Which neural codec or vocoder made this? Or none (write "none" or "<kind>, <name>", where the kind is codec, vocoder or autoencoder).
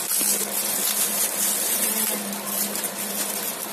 none